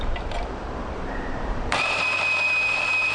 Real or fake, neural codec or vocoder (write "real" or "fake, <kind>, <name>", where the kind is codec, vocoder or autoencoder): fake, vocoder, BigVGAN v2